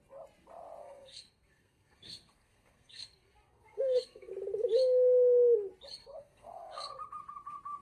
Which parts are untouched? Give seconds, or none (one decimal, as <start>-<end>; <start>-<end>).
0.0-0.8; 4.3-6.0; 6.9-7.8